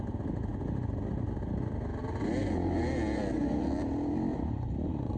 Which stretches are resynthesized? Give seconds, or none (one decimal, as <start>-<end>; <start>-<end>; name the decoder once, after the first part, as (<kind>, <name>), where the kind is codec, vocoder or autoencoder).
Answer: none